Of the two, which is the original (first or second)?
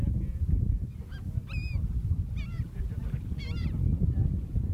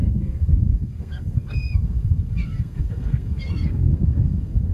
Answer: first